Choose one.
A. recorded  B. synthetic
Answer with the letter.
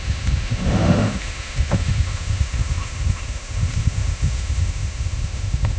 B